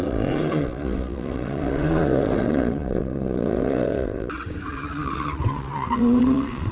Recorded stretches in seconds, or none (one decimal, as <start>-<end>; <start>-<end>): none